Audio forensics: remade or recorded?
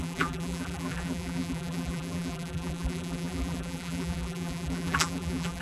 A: remade